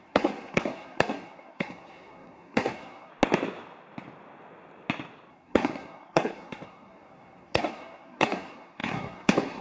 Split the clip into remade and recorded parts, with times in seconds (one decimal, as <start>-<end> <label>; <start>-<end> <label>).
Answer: 0.0-3.1 remade; 3.1-5.3 recorded; 5.3-9.6 remade